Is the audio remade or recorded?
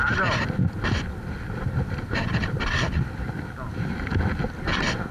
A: recorded